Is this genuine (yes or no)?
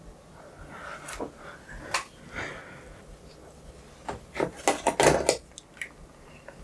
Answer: yes